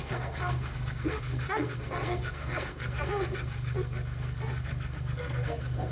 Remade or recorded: remade